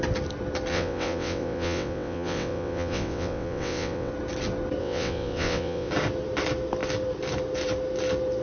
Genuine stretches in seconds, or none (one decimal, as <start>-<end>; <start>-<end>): 0.0-0.7; 4.1-4.8; 5.9-8.4